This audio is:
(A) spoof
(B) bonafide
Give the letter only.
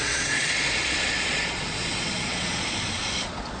A